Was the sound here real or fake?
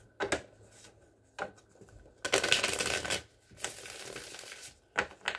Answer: real